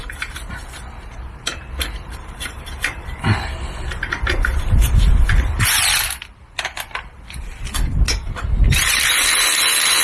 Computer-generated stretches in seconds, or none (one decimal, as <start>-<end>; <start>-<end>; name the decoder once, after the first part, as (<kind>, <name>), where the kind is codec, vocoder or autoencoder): 0.0-5.8 (vocoder, BigVGAN v2); 8.7-10.0